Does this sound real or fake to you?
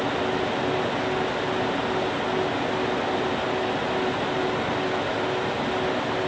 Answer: real